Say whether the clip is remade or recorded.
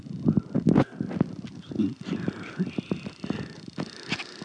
recorded